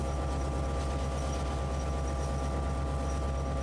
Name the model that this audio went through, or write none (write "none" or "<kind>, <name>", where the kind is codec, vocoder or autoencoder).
none